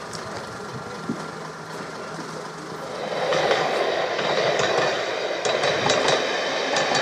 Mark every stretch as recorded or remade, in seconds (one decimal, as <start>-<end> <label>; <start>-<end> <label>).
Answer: 0.0-3.3 recorded; 3.3-5.1 remade; 5.1-7.0 recorded